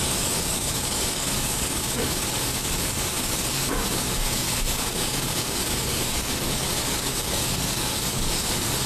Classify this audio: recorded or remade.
remade